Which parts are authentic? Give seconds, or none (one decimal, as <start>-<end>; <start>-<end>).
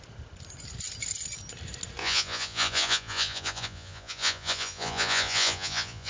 0.0-2.0